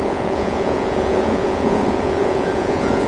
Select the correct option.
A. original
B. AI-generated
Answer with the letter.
B